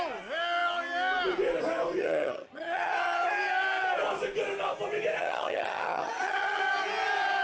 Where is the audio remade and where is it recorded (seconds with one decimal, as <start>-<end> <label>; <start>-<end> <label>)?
0.0-2.0 recorded; 2.0-3.3 remade; 3.3-5.2 recorded; 5.2-6.6 remade; 6.6-7.4 recorded